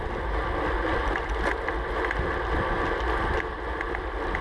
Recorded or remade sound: recorded